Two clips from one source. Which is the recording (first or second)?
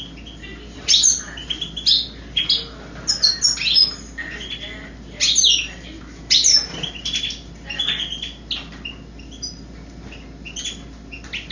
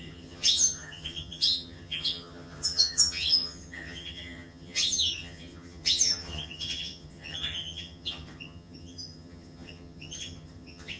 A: first